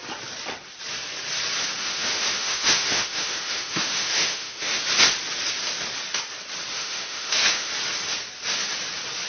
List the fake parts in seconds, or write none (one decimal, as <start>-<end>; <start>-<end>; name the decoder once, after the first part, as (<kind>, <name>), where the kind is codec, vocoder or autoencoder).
1.8-4.8 (autoencoder, DAC-VAE); 6.7-7.7